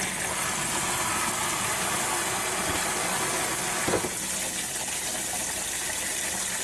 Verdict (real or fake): real